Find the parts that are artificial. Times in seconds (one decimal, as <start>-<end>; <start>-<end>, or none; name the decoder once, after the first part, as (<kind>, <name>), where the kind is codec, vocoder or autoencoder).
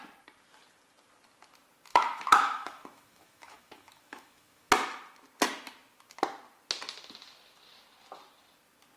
1.9-4.7 (autoencoder, DAC-VAE)